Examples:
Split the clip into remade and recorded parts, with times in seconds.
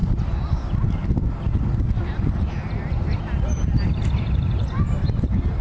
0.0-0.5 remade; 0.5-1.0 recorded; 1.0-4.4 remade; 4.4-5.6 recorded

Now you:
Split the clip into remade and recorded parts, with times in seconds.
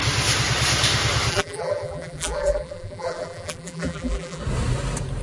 0.0-1.3 recorded; 1.3-4.4 remade; 4.4-5.2 recorded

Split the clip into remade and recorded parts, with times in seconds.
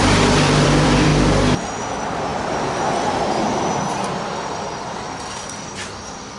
0.0-1.1 remade; 1.1-1.8 recorded; 1.8-2.3 remade; 2.3-4.6 recorded; 4.6-6.4 remade